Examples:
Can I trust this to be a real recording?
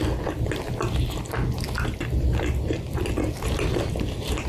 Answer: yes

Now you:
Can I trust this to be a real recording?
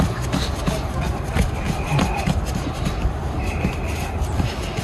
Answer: yes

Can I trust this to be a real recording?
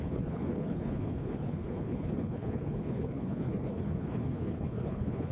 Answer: no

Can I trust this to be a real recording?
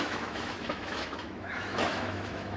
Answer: no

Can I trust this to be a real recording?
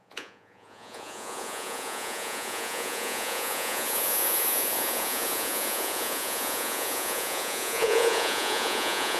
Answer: no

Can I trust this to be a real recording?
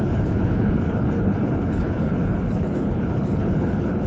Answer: no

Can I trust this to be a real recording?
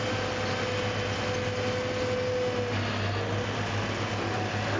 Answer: yes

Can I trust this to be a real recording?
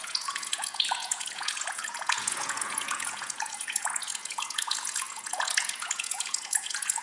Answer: no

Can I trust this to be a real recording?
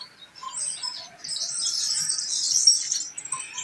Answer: yes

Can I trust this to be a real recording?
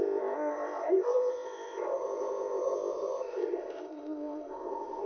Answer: no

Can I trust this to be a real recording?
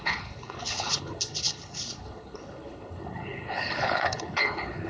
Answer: no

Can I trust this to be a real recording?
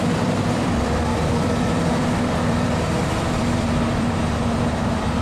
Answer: no